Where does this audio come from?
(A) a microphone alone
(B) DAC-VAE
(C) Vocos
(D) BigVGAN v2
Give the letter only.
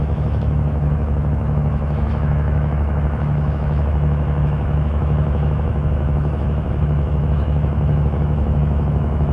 B